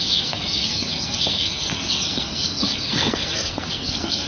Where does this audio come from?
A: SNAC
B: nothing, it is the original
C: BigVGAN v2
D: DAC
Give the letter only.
A